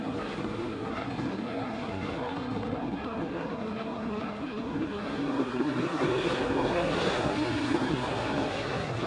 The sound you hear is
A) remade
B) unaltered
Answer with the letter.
A